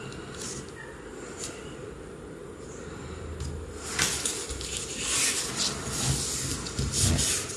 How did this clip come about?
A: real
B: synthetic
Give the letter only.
A